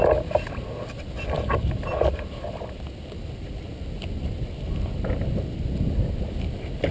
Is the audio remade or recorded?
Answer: recorded